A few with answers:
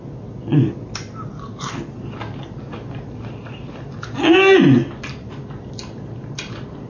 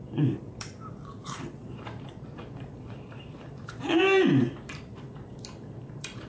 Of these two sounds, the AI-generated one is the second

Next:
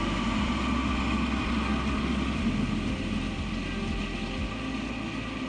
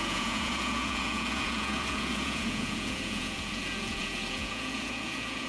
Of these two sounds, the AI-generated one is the second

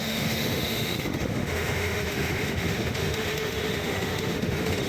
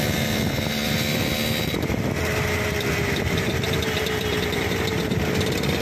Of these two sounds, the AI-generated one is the first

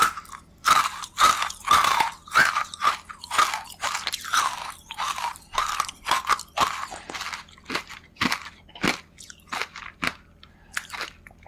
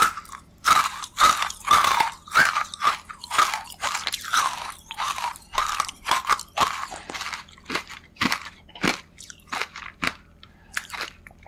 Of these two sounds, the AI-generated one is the second